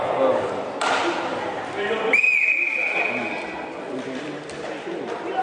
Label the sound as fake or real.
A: real